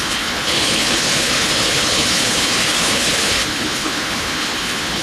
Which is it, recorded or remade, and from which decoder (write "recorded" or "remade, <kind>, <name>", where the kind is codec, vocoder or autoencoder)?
remade, codec, HILCodec